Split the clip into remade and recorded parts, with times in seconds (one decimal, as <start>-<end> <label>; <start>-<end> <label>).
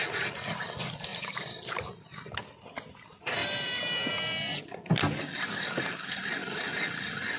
0.0-1.1 recorded; 1.1-1.9 remade; 1.9-3.4 recorded; 3.4-4.1 remade; 4.1-7.4 recorded